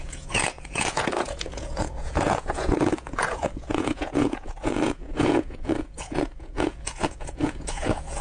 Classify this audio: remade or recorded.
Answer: remade